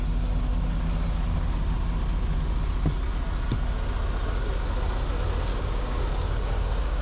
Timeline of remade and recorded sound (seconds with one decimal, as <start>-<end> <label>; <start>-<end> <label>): 0.0-5.5 recorded; 5.5-7.0 remade

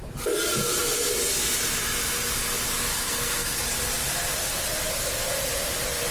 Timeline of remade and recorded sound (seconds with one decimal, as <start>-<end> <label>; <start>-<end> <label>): 0.0-2.9 recorded; 2.9-3.6 remade; 3.6-6.1 recorded

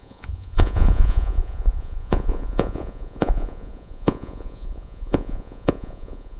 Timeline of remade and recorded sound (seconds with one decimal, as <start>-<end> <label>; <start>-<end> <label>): 0.0-6.4 remade

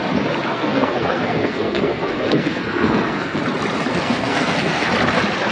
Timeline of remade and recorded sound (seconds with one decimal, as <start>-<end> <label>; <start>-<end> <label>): 0.0-0.5 recorded; 0.5-3.4 remade; 3.4-3.9 recorded; 3.9-4.9 remade; 4.9-5.5 recorded

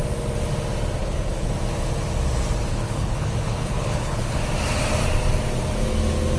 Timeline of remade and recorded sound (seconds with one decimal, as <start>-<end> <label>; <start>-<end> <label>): 0.0-1.0 recorded; 1.0-1.5 remade; 1.5-2.7 recorded; 2.7-4.4 remade; 4.4-6.4 recorded